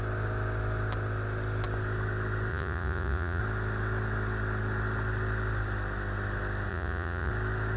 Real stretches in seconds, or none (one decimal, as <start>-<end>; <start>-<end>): 0.0-2.5; 3.4-6.7; 7.3-7.8